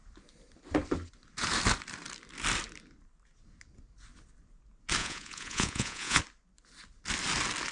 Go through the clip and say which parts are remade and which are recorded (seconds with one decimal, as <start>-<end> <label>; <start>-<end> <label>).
0.0-5.0 recorded; 5.0-6.2 remade; 6.2-7.7 recorded